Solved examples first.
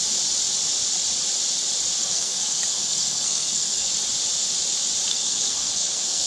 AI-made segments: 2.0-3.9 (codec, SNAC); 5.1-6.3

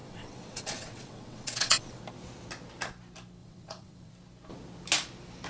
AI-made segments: 0.0-2.0 (vocoder, WaveNeXt); 3.4-4.1